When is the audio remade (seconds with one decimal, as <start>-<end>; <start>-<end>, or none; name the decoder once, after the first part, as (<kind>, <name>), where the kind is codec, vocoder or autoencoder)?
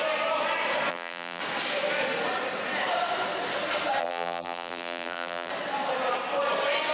0.9-1.4 (vocoder, BigVGAN v2); 4.0-5.5